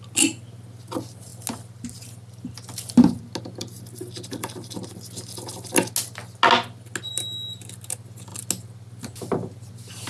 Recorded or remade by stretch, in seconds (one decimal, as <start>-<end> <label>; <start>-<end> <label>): 0.0-10.1 recorded